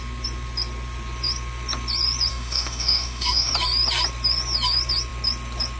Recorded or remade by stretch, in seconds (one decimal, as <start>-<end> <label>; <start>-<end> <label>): 0.0-2.3 recorded; 2.3-3.5 remade; 3.5-5.8 recorded